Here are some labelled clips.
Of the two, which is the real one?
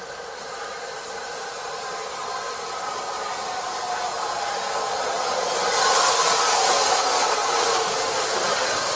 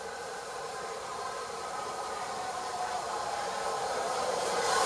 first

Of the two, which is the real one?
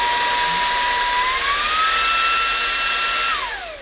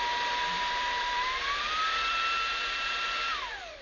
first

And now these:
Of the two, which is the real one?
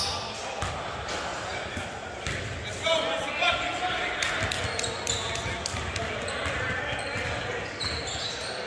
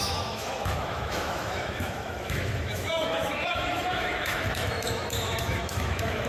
first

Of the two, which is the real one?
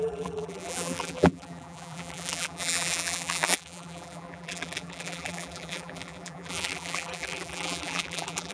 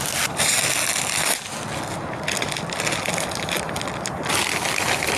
second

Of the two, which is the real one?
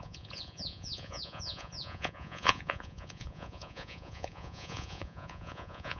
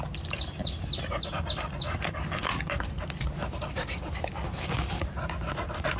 second